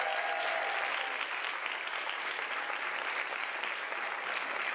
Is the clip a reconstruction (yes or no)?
no